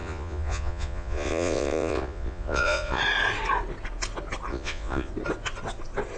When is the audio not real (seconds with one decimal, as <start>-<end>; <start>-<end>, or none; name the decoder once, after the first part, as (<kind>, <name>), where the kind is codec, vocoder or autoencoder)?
0.0-3.0 (vocoder, Vocos); 4.5-5.1